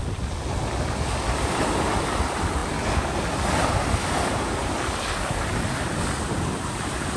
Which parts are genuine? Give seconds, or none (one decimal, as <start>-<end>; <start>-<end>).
0.0-7.2